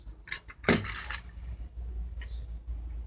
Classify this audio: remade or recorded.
recorded